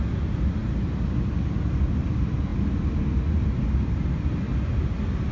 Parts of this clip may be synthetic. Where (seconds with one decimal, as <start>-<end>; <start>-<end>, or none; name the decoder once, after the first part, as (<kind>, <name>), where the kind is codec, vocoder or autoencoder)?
none